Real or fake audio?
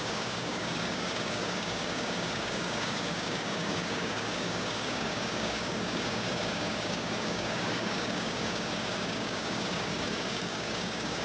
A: fake